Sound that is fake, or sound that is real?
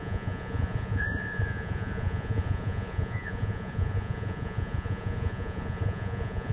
fake